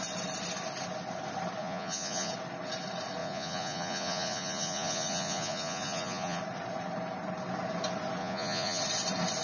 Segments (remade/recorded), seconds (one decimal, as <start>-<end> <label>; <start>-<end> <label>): 0.0-1.6 recorded; 1.6-2.3 remade; 2.3-3.2 recorded; 3.2-6.4 remade; 6.4-8.2 recorded; 8.2-8.8 remade; 8.8-9.4 recorded